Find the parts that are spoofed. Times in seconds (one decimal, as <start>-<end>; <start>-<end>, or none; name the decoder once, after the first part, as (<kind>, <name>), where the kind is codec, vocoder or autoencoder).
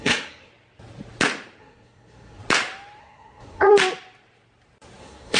0.0-0.5 (codec, SNAC); 1.6-2.4; 3.0-3.7; 5.0-5.4